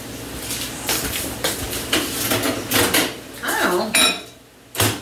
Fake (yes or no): no